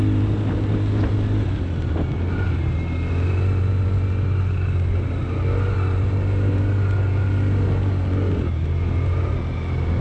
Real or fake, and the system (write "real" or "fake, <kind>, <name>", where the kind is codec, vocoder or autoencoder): real